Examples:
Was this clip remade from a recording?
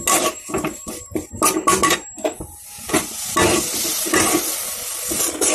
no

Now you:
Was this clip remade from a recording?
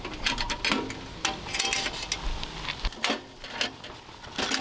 no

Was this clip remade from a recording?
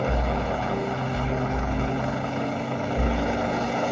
yes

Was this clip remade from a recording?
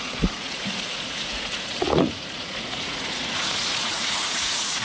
yes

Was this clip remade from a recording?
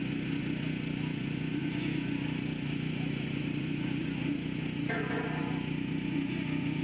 yes